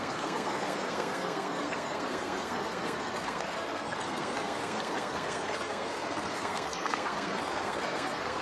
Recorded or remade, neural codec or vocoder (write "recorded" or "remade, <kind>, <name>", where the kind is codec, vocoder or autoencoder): remade, codec, SNAC